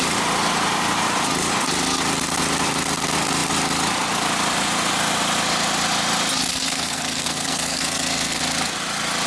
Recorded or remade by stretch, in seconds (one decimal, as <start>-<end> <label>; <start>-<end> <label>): 0.0-6.5 recorded; 6.5-8.4 remade; 8.4-9.3 recorded